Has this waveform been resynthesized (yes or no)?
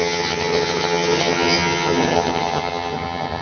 yes